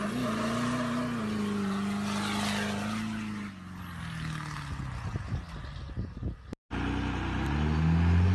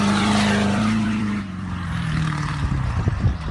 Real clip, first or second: first